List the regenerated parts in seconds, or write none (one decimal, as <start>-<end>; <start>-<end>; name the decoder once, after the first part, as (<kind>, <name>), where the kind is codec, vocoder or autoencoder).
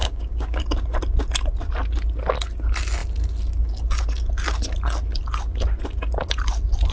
0.0-0.6 (codec, DAC)